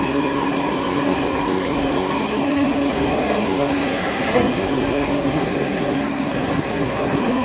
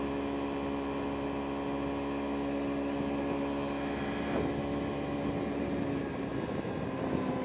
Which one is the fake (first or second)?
first